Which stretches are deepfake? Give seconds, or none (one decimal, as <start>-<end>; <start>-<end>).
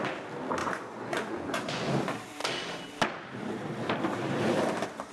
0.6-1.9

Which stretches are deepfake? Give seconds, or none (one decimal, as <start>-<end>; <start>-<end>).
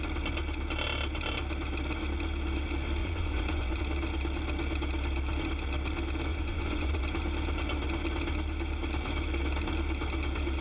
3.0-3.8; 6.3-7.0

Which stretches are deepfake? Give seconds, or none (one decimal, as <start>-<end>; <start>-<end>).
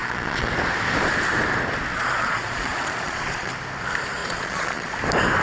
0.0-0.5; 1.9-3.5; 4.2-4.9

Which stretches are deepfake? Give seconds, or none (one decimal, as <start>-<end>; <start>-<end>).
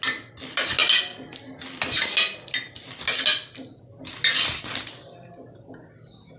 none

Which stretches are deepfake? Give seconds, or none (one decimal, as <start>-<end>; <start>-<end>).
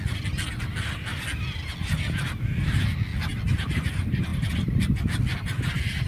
none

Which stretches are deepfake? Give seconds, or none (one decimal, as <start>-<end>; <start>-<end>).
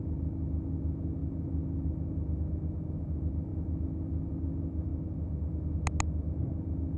none